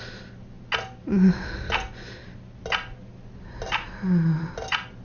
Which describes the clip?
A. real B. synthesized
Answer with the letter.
A